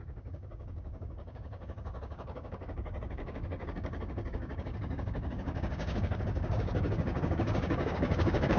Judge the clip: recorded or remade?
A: remade